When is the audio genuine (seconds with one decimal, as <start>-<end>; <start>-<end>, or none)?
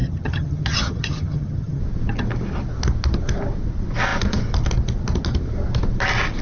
1.8-6.4